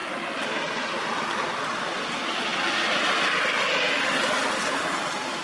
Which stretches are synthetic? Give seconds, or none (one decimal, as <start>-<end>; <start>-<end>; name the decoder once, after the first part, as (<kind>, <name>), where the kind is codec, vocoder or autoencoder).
none

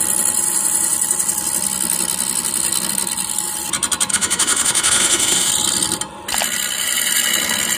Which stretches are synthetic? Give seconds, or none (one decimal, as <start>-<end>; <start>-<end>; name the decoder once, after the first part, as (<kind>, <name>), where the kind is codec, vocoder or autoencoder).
4.1-5.5 (autoencoder, DAC-VAE)